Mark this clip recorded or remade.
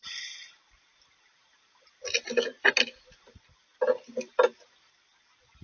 recorded